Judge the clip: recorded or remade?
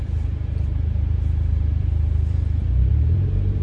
remade